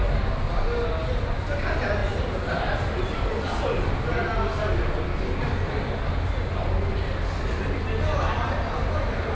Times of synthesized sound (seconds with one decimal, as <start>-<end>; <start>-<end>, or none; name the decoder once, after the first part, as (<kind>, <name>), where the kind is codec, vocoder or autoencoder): none